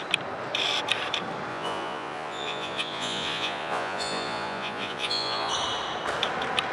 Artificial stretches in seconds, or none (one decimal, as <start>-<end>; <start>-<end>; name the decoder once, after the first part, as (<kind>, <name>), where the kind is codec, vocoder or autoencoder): 1.5-5.5 (vocoder, Vocos)